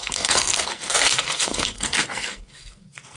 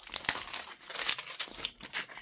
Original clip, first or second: second